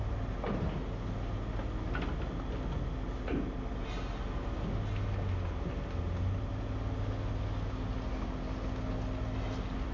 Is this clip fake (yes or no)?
no